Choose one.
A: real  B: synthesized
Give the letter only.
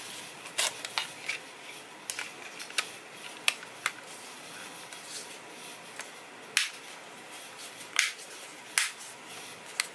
A